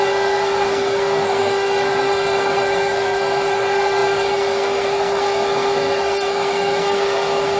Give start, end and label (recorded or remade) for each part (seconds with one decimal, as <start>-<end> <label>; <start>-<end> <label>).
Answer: 0.0-7.6 remade